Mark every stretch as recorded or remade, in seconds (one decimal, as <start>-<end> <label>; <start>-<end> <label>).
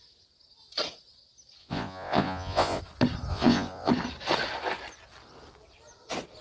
0.0-1.6 recorded; 1.6-2.8 remade; 2.8-3.3 recorded; 3.3-3.9 remade; 3.9-6.4 recorded